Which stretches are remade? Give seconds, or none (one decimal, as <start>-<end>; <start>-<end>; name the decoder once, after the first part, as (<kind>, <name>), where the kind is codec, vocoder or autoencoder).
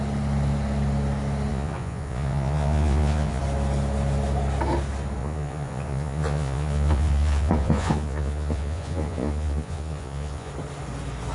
1.5-3.4 (vocoder, Vocos); 5.2-10.5